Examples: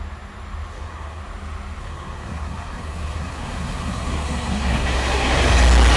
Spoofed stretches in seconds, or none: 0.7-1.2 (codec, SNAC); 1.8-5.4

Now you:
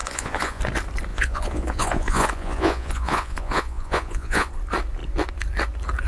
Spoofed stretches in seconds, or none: 0.0-0.6 (vocoder, Vocos); 1.1-4.5

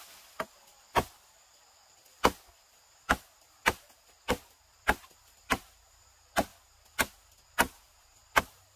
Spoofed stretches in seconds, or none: none

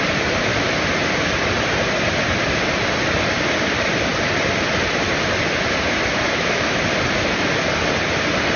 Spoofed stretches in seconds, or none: 6.1-6.8 (autoencoder, DAC-VAE)

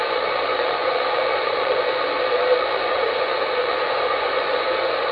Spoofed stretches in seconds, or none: 0.5-1.8 (vocoder, Vocos); 2.9-5.1

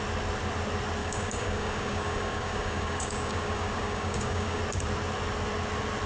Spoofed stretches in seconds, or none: 1.0-4.6 (codec, DAC)

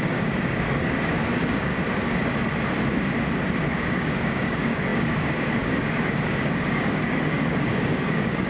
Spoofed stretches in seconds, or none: 0.0-1.7 (codec, DAC); 3.7-8.5

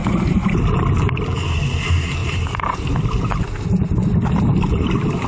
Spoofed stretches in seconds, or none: 0.0-0.6 (vocoder, BigVGAN v2); 2.2-3.4